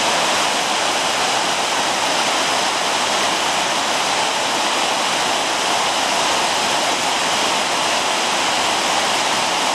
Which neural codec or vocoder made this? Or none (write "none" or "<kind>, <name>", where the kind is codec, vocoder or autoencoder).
none